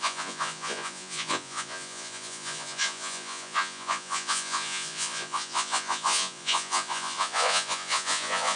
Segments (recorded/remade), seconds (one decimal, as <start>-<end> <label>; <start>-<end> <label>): 0.0-8.6 remade